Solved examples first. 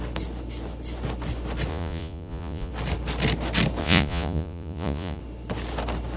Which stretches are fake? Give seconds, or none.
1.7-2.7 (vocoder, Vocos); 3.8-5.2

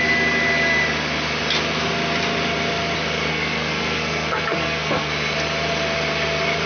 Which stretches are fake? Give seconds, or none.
3.3-5.1 (codec, SNAC)

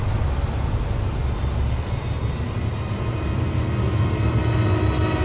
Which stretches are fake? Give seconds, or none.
none

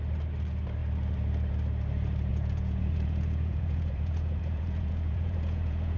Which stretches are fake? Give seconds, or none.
2.3-6.0 (vocoder, Vocos)

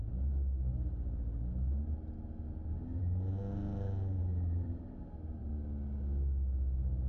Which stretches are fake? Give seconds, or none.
4.2-5.5 (vocoder, BigVGAN v2)

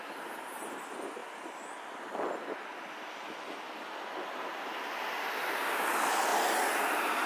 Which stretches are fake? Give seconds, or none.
none

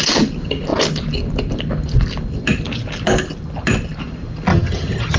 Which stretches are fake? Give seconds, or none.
4.5-5.2 (vocoder, HiFi-GAN)

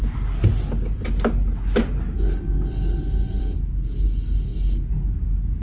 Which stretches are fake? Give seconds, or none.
none